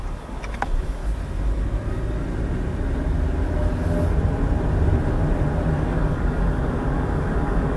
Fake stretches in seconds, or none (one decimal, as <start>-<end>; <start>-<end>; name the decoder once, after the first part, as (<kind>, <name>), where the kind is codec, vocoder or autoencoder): 0.0-1.0 (codec, DAC); 5.7-7.8